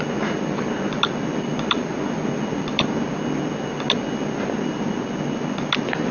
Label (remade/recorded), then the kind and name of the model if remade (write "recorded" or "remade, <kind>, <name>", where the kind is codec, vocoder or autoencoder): recorded